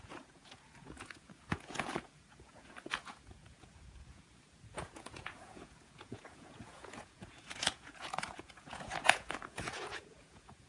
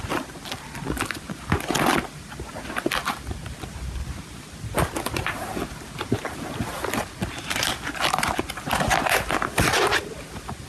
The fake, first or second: first